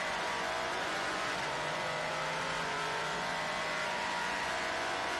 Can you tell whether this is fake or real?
fake